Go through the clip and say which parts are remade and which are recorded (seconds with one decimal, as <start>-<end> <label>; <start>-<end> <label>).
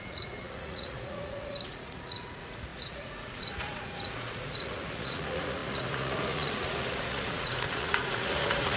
0.0-8.8 remade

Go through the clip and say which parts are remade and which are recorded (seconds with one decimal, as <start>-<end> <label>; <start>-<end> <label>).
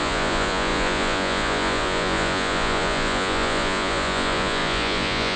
0.0-5.4 remade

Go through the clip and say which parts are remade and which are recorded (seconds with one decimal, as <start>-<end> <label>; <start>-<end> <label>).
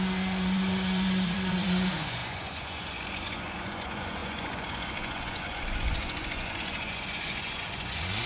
0.0-8.3 remade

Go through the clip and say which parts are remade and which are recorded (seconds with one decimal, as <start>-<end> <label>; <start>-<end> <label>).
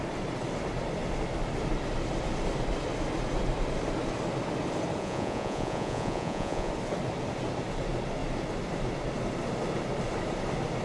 0.0-5.0 recorded; 5.0-6.7 remade; 6.7-10.8 recorded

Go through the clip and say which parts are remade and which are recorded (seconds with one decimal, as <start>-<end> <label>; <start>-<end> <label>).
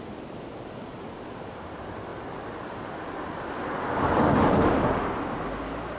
0.0-6.0 recorded